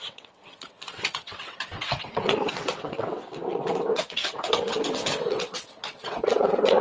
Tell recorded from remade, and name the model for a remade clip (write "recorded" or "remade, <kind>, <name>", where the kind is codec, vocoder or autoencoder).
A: remade, vocoder, WaveNeXt